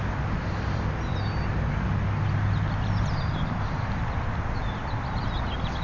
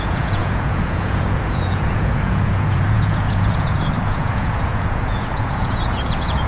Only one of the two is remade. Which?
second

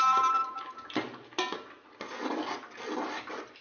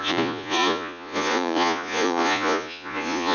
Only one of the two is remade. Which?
second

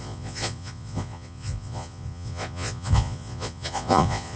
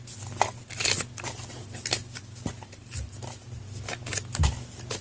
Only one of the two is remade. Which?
first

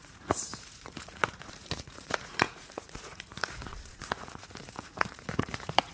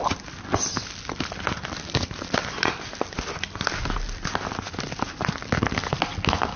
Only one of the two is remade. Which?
first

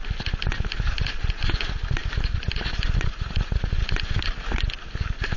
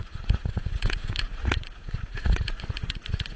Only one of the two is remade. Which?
second